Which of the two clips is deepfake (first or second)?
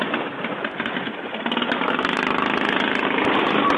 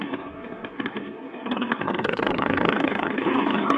second